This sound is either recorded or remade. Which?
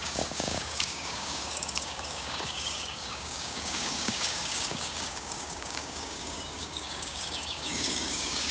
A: remade